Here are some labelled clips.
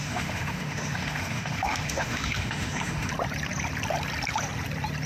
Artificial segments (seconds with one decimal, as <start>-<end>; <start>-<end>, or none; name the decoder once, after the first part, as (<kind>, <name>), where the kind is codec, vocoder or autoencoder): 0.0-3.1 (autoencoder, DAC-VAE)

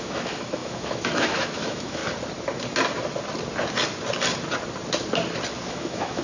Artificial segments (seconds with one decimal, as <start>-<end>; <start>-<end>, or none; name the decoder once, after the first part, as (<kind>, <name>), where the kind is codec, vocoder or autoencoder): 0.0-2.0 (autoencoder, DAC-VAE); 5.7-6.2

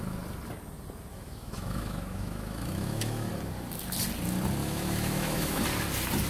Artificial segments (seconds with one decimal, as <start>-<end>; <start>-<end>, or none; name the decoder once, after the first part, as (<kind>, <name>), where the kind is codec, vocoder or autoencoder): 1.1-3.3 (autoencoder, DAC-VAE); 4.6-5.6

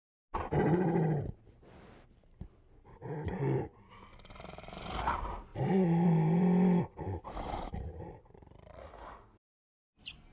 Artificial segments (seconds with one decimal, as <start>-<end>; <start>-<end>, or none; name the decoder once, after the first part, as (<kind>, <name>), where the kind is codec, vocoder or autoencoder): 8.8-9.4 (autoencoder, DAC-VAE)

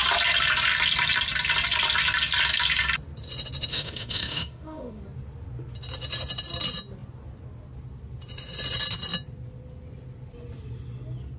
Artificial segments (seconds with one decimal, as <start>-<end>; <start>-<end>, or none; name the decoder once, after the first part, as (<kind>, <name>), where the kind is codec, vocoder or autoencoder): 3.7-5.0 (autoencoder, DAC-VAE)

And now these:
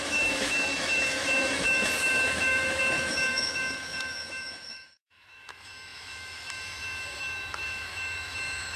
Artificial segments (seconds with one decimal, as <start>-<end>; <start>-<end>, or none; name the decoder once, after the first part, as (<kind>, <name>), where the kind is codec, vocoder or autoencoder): 0.0-8.8 (autoencoder, DAC-VAE)